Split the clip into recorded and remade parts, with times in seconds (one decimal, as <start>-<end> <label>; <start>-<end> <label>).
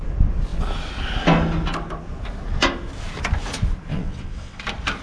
0.0-3.9 recorded; 3.9-4.6 remade; 4.6-5.0 recorded